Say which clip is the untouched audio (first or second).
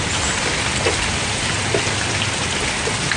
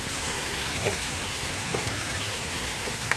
first